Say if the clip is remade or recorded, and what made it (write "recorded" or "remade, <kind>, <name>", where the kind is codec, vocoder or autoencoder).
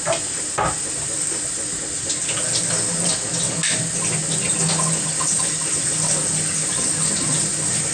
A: recorded